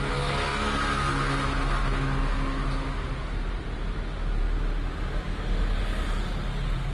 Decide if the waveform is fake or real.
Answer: real